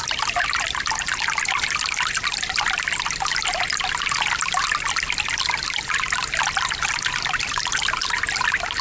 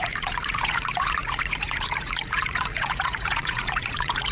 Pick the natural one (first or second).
first